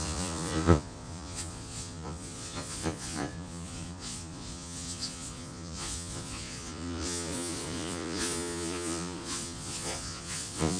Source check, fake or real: fake